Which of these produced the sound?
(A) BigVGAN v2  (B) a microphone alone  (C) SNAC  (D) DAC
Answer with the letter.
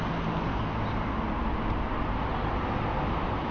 B